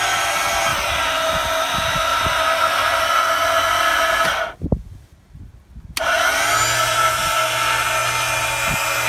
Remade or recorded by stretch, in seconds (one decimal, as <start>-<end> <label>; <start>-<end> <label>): 0.0-2.1 recorded; 2.1-3.0 remade; 3.0-9.1 recorded